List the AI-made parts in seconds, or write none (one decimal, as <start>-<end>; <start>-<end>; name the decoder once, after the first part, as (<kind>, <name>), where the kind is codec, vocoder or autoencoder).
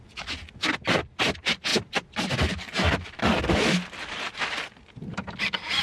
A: none